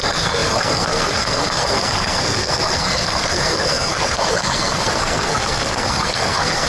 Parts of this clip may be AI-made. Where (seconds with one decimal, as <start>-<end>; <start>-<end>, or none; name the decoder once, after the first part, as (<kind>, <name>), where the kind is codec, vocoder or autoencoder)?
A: 0.0-6.7 (codec, SNAC)